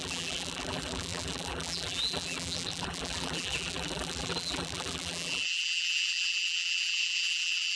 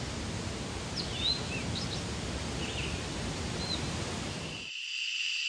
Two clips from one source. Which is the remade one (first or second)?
first